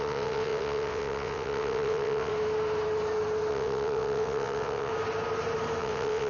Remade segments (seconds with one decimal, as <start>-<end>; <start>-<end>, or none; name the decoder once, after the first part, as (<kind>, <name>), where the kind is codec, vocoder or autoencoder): 0.0-2.3 (vocoder, WaveNeXt); 3.5-4.9; 5.8-6.3